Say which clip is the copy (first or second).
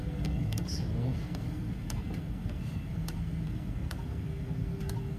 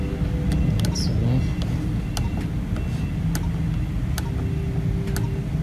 first